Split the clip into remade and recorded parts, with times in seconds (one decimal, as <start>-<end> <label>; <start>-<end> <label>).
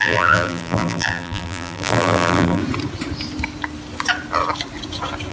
0.0-2.6 remade; 2.6-5.3 recorded